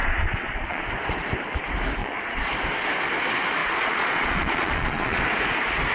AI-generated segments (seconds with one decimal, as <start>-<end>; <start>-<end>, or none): 0.0-0.9; 2.0-2.5; 3.6-5.2